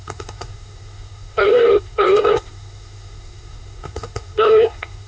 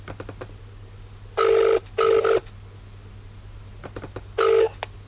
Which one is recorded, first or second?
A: second